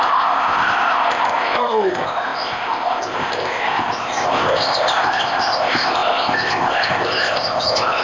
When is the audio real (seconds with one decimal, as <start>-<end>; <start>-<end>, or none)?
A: none